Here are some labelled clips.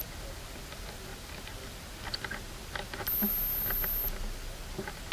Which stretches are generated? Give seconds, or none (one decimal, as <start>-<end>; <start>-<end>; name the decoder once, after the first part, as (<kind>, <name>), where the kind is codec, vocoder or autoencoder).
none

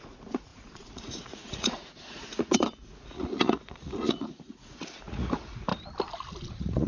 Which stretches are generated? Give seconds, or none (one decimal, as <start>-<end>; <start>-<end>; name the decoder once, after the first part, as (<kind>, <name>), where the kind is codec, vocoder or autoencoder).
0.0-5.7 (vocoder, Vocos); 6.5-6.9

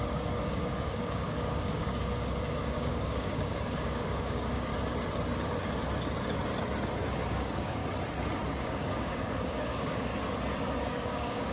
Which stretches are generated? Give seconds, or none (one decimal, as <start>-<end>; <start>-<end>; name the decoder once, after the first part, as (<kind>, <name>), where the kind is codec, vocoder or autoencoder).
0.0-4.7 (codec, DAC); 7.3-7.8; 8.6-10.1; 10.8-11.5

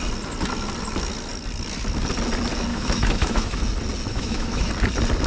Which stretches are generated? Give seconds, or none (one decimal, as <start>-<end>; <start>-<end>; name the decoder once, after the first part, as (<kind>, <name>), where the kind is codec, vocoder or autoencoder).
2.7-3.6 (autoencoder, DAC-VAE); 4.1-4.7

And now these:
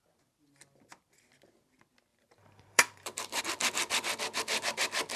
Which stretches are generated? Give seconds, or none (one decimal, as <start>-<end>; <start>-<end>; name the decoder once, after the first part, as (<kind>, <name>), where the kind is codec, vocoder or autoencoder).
2.1-3.4 (vocoder, BigVGAN v2)

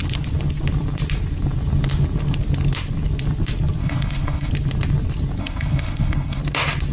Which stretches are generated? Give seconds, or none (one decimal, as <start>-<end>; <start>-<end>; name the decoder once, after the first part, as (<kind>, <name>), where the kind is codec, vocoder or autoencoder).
3.8-4.5 (codec, HILCodec); 5.4-6.4